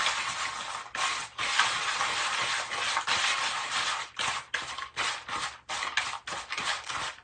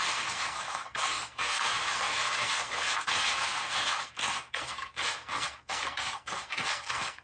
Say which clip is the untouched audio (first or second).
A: first